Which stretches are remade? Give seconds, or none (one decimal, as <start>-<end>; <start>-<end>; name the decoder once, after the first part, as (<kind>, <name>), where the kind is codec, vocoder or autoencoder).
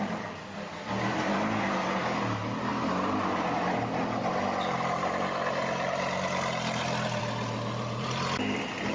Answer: none